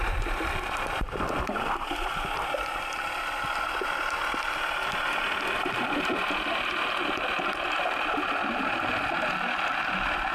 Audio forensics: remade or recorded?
recorded